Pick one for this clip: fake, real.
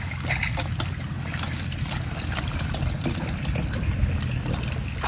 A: real